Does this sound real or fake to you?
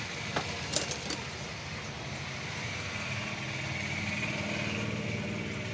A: real